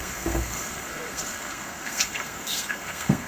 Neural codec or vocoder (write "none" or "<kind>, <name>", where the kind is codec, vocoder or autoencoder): codec, SNAC